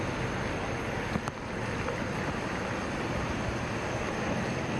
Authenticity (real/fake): real